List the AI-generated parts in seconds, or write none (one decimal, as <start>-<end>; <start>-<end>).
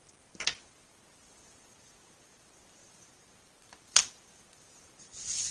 none